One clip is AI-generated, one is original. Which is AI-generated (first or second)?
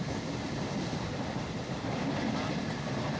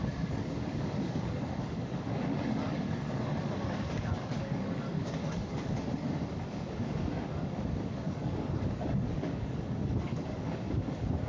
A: second